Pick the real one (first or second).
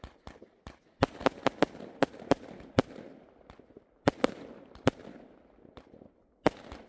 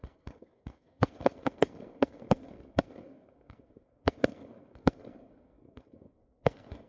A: first